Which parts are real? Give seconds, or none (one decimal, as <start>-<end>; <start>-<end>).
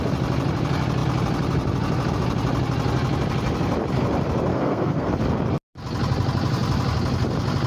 0.0-4.5; 5.1-7.7